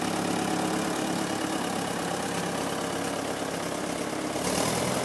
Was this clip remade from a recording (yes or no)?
no